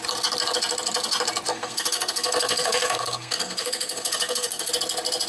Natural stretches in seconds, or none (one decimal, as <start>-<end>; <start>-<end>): 0.0-1.5; 4.7-5.3

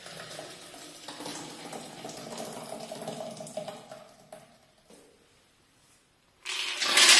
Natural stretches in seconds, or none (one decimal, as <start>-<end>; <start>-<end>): 0.0-7.2

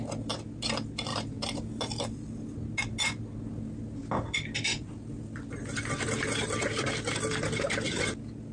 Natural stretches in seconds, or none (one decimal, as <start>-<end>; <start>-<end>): 0.0-1.1; 1.8-8.5

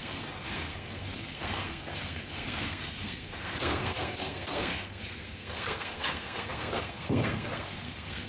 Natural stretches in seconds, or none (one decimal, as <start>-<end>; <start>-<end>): none

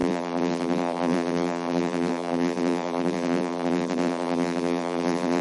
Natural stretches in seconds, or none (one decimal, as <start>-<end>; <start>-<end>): none